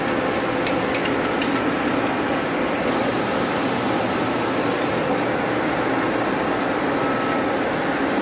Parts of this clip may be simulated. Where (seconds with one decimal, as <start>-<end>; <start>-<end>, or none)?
none